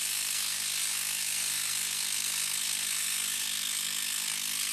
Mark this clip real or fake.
fake